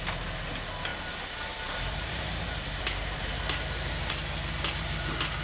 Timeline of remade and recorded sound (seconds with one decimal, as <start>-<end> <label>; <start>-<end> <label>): 0.0-0.9 recorded; 0.9-4.1 remade; 4.1-5.4 recorded